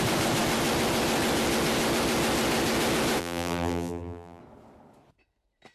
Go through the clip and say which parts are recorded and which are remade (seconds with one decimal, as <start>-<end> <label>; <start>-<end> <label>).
0.0-3.2 recorded; 3.2-4.4 remade; 4.4-5.7 recorded